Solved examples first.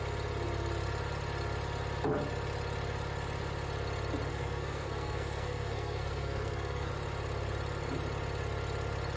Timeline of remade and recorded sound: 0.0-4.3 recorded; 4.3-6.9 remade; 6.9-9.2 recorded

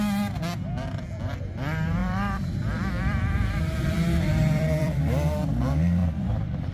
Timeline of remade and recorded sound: 0.0-2.0 recorded; 2.0-5.0 remade; 5.0-6.0 recorded; 6.0-6.7 remade

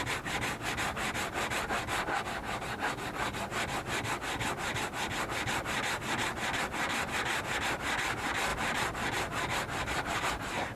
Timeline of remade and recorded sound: 0.0-10.8 recorded

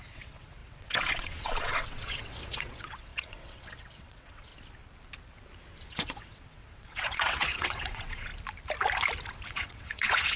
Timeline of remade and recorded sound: 0.0-4.5 remade; 4.5-5.9 recorded; 5.9-8.3 remade; 8.3-9.5 recorded; 9.5-10.4 remade

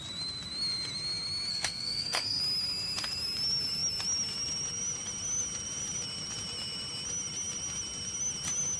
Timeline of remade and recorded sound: 0.0-1.5 recorded; 1.5-2.4 remade; 2.4-8.8 recorded